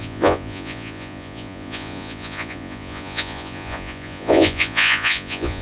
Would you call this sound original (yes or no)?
no